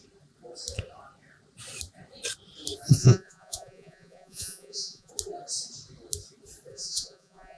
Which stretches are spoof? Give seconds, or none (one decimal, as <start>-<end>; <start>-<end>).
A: 3.0-5.1; 6.7-7.6